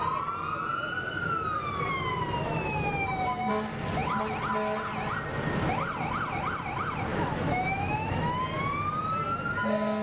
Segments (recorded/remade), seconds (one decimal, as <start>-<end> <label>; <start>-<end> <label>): 0.0-2.4 recorded; 2.4-3.5 remade; 3.5-7.1 recorded; 7.1-8.4 remade; 8.4-10.0 recorded

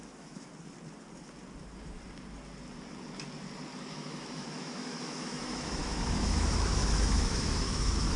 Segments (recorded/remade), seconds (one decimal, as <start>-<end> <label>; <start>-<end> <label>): 0.0-0.5 remade; 0.5-3.9 recorded; 3.9-8.2 remade

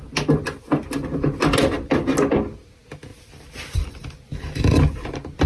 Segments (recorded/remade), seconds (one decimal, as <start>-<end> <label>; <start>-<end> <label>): 0.0-5.5 recorded

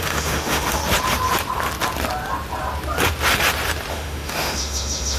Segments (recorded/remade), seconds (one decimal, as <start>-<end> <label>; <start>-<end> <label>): 0.0-0.8 remade; 0.8-3.9 recorded; 3.9-5.2 remade

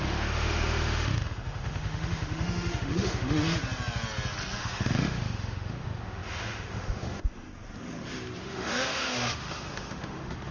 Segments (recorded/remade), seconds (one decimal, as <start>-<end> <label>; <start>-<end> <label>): 0.0-3.4 remade; 3.4-4.6 recorded; 4.6-7.5 remade; 7.5-8.4 recorded; 8.4-10.5 remade

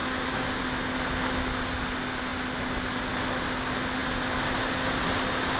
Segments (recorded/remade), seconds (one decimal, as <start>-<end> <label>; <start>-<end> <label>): 0.0-0.5 remade; 0.5-5.6 recorded

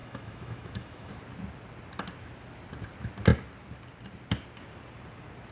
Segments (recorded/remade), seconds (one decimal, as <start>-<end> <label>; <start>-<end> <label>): 0.0-1.1 remade; 1.1-5.5 recorded

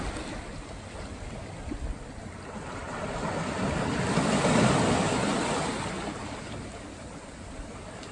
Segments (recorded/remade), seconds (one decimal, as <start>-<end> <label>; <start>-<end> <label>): 0.0-8.1 recorded